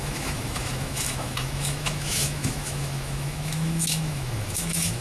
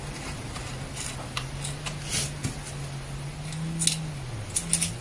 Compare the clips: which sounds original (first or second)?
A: second